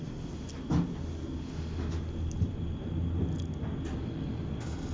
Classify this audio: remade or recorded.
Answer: recorded